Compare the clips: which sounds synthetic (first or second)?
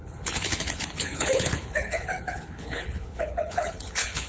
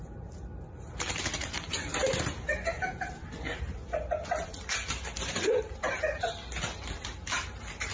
first